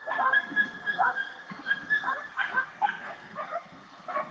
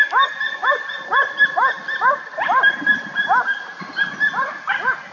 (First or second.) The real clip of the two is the second